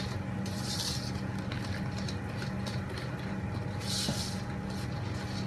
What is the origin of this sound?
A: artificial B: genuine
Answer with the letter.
B